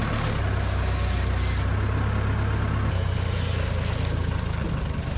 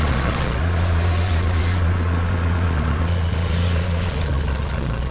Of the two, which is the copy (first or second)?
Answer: second